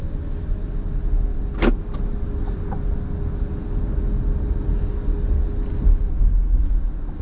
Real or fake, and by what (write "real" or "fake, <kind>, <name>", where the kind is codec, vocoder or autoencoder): real